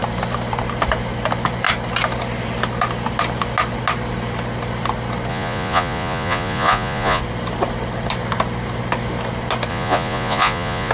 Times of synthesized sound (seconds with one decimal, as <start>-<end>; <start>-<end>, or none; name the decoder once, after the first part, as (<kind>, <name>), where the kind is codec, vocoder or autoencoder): 5.3-7.2 (vocoder, Vocos); 9.7-10.9